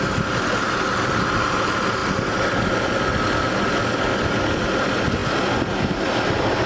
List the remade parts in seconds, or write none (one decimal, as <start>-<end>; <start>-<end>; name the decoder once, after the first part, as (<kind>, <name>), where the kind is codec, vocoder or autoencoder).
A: none